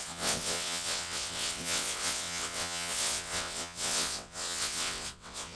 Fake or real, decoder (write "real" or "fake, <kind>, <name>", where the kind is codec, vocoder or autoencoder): fake, vocoder, WaveNeXt